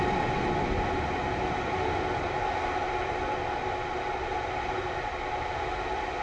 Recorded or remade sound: recorded